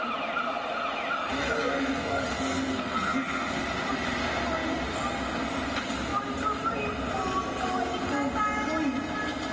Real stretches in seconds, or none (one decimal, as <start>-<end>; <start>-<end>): 0.0-1.7; 3.5-9.5